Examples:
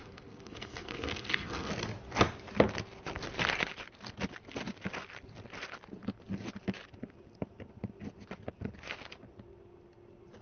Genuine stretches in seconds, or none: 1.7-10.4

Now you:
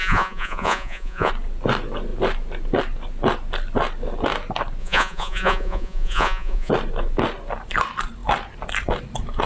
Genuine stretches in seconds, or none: 1.3-4.8; 6.7-9.5

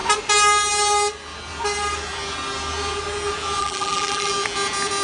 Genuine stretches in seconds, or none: 0.0-3.6; 4.3-5.0

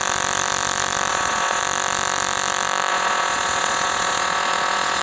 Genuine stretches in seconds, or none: 0.0-1.1; 1.6-2.9

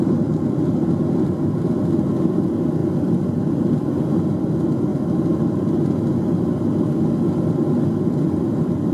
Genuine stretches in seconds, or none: 0.0-4.9; 5.4-8.9

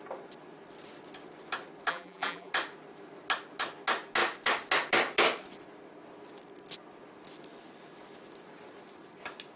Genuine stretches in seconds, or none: 0.0-1.9; 2.5-9.6

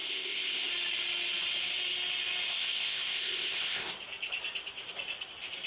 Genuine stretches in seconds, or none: 0.7-2.5; 3.9-5.7

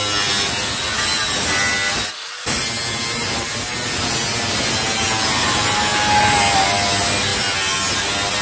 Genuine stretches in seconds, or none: 0.0-8.4